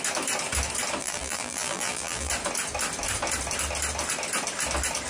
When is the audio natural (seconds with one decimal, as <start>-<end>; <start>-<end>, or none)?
0.0-1.0; 2.3-5.1